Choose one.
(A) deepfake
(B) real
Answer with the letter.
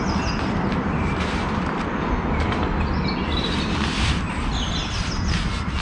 B